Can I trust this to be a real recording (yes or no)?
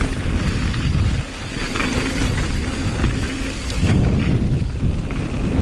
yes